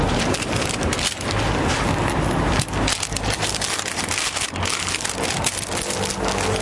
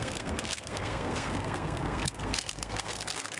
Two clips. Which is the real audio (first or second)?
first